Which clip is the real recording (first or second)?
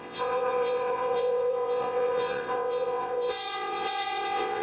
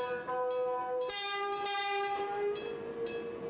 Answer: second